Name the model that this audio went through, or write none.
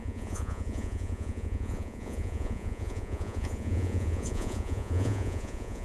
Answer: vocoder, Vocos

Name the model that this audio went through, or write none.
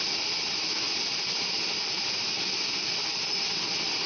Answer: vocoder, BigVGAN v2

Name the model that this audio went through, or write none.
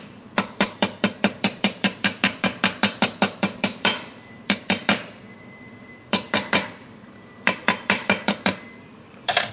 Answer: vocoder, BigVGAN v2